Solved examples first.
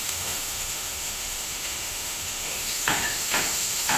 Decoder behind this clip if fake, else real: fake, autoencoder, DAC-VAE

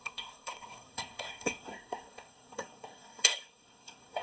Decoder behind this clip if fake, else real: fake, codec, SNAC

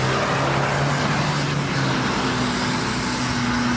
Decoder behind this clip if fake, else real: real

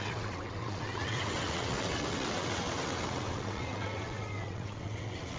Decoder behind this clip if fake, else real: fake, vocoder, WaveNeXt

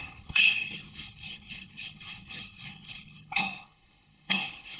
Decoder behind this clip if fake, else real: fake, codec, HILCodec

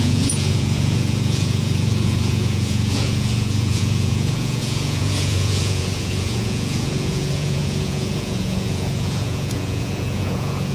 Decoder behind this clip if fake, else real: fake, vocoder, Vocos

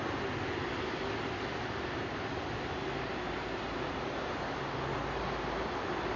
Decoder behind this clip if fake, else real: real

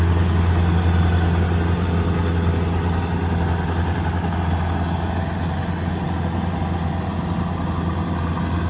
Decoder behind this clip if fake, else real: real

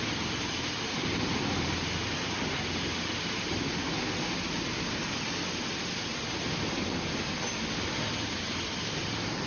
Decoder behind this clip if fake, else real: real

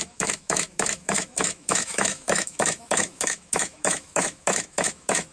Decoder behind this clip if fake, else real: fake, autoencoder, DAC-VAE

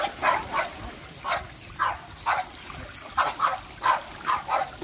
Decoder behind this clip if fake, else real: real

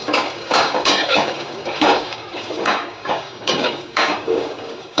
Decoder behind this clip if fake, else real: fake, codec, DAC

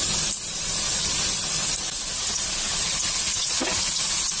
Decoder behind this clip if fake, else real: real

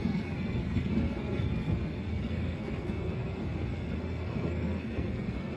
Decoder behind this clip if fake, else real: fake, codec, SNAC